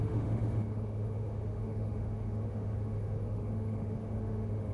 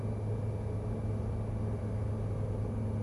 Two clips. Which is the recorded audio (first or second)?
second